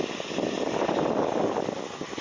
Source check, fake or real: real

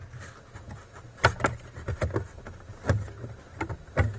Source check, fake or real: real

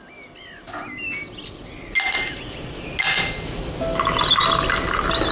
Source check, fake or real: real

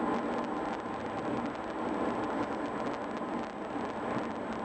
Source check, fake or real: real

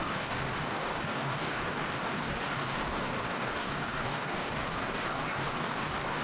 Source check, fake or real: fake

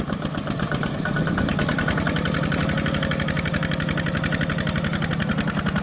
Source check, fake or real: real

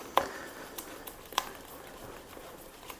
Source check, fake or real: real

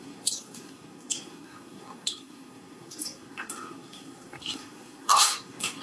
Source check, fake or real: fake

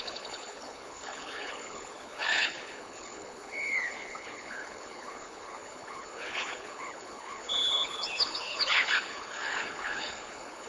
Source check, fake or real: fake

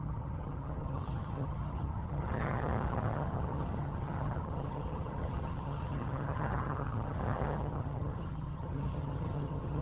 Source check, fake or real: fake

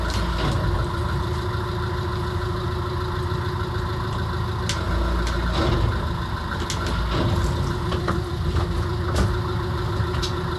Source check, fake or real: real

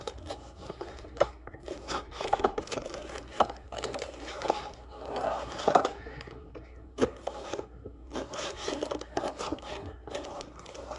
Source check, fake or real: fake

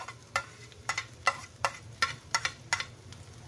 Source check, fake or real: real